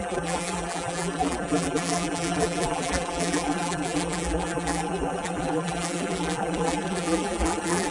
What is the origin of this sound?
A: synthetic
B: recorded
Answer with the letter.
A